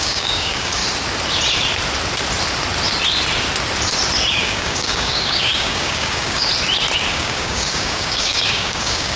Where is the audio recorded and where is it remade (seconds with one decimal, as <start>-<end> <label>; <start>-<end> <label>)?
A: 0.0-0.8 remade; 0.8-4.3 recorded; 4.3-6.5 remade; 6.5-7.1 recorded; 7.1-9.2 remade